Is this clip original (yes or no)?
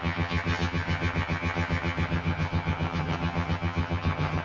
no